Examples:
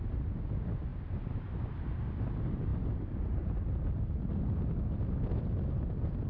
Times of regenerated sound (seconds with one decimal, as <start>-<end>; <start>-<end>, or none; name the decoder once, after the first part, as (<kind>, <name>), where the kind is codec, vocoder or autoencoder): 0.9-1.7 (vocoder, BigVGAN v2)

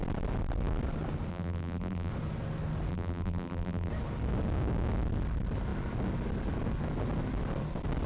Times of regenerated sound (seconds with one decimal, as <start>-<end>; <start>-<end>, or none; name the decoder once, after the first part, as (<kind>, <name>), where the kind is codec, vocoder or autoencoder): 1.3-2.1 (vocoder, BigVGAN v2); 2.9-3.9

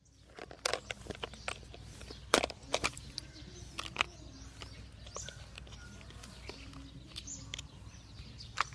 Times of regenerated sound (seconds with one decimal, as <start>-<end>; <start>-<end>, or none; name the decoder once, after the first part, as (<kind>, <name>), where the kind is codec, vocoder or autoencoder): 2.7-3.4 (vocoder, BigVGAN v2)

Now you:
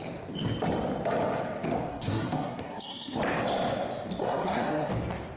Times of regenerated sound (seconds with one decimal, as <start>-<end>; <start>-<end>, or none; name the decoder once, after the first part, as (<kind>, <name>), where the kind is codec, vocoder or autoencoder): 1.9-3.2 (codec, SNAC); 4.2-4.9

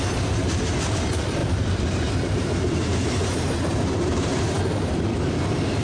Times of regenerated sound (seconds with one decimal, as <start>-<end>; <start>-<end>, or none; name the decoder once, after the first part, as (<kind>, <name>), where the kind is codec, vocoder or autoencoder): 0.4-0.9 (vocoder, BigVGAN v2); 1.4-4.9

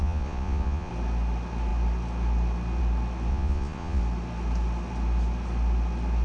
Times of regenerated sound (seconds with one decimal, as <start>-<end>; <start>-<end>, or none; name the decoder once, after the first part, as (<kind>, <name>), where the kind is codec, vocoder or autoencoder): 0.0-0.9 (vocoder, Vocos); 3.3-4.0

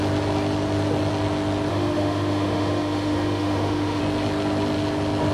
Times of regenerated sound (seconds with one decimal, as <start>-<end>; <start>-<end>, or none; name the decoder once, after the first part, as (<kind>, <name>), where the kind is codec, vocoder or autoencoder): 1.7-4.0 (autoencoder, DAC-VAE)

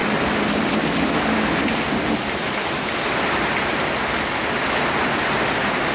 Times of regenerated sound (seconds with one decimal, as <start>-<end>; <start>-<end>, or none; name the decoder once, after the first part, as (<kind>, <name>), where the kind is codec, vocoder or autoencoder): 0.0-3.5 (vocoder, BigVGAN v2)